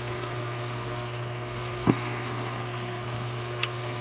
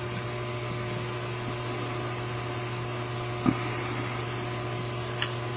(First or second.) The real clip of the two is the second